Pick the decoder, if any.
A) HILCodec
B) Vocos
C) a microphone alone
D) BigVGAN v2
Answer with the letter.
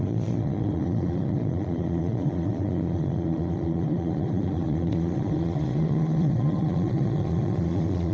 B